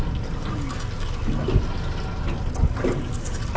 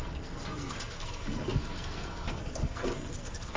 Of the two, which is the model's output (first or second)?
second